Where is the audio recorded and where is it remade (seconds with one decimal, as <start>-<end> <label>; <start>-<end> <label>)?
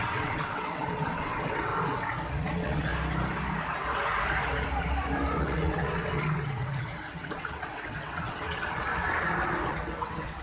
0.0-1.7 remade; 1.7-2.3 recorded; 2.3-2.9 remade; 2.9-5.4 recorded; 5.4-8.9 remade; 8.9-9.7 recorded; 9.7-10.4 remade